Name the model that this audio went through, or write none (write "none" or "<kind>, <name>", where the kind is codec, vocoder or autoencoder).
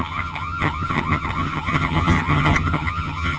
vocoder, HiFi-GAN